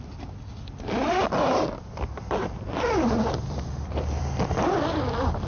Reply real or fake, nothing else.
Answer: fake